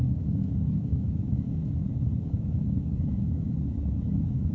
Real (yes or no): no